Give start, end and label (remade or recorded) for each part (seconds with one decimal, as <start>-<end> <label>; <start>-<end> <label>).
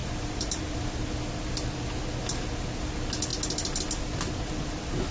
0.0-5.1 recorded